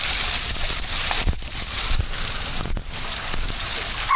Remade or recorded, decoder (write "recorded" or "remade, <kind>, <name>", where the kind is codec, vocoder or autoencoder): recorded